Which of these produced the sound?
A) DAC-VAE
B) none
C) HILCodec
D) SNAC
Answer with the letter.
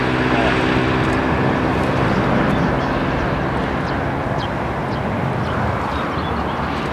B